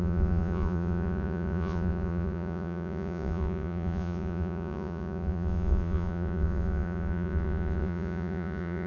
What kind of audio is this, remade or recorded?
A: remade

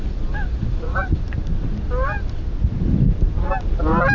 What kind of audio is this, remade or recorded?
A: recorded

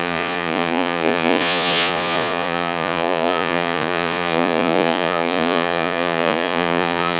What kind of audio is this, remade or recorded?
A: remade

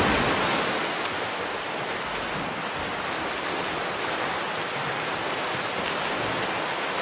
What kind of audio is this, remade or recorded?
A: recorded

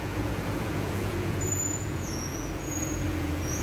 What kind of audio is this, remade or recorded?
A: remade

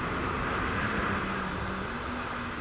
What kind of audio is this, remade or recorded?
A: recorded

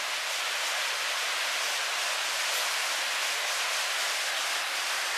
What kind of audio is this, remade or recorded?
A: recorded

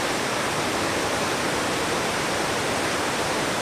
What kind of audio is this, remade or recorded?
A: recorded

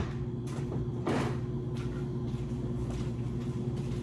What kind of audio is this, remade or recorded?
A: recorded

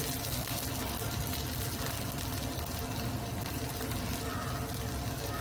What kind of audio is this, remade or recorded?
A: recorded